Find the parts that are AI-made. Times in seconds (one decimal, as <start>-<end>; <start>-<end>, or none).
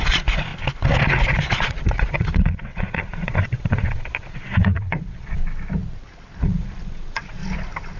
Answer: 0.0-0.5; 1.5-5.4; 6.4-7.4